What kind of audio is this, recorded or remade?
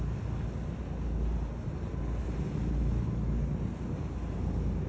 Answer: recorded